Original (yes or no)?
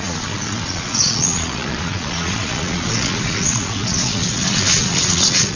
no